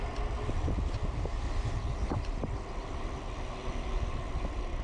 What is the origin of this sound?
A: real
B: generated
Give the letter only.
B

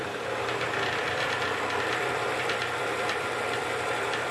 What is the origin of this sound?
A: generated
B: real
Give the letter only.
A